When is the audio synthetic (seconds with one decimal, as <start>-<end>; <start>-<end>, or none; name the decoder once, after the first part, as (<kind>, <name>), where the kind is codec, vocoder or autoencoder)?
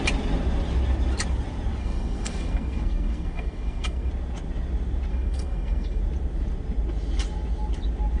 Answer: 1.8-4.1 (codec, SNAC); 5.1-6.0